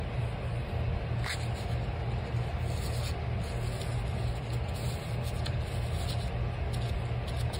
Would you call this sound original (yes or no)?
yes